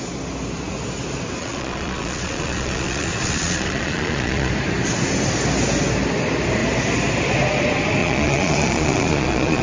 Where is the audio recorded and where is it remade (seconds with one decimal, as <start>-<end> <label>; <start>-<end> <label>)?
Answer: 0.0-1.4 recorded; 1.4-4.5 remade; 4.5-8.0 recorded; 8.0-9.6 remade